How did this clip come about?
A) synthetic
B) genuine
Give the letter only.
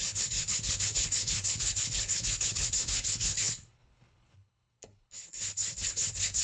A